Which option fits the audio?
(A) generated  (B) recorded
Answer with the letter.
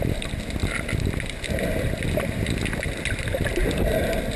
B